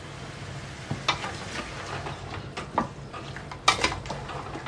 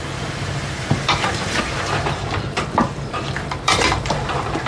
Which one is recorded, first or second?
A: first